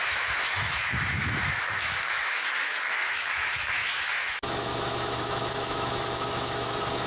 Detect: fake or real fake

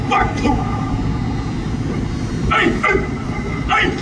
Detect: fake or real fake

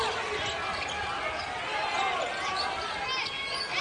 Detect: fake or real real